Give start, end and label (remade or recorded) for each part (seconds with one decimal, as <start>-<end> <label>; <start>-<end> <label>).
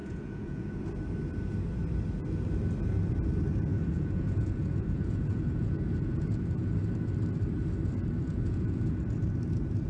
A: 0.0-0.8 remade; 0.8-3.7 recorded; 3.7-6.8 remade; 6.8-8.2 recorded; 8.2-9.0 remade; 9.0-9.9 recorded